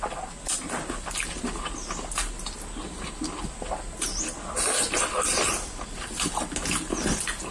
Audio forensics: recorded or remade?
recorded